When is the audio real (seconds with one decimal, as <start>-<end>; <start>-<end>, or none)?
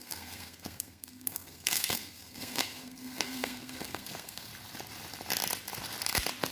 4.5-6.5